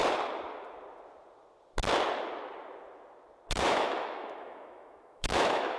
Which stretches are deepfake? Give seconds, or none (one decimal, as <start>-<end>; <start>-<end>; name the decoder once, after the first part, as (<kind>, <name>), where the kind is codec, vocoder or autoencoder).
3.5-5.8 (autoencoder, DAC-VAE)